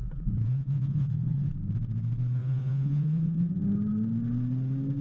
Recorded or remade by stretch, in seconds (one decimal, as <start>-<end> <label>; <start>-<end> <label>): 0.0-1.5 remade; 1.5-2.4 recorded; 2.4-3.5 remade; 3.5-5.0 recorded